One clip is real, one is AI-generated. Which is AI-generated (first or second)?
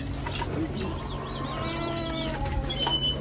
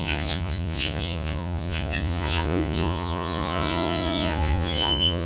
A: second